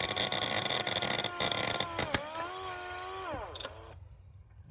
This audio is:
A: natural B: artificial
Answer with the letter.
A